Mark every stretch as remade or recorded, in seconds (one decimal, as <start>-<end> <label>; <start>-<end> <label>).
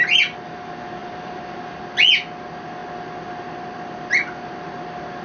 0.0-1.0 recorded; 1.0-1.8 remade; 1.8-5.2 recorded